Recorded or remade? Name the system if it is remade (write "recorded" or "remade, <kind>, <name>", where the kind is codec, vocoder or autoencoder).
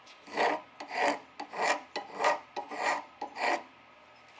recorded